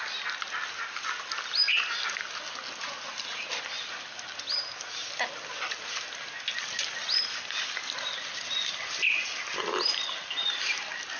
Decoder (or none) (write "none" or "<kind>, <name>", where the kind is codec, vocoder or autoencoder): none